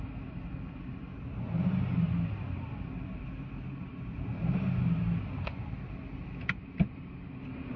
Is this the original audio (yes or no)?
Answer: yes